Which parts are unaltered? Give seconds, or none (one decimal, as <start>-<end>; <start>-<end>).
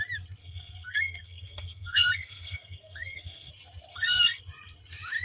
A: 0.0-0.4; 3.5-3.9; 4.4-5.2